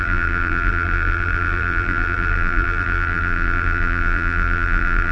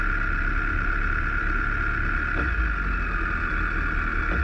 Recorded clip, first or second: second